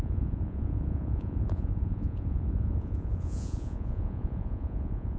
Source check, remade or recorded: remade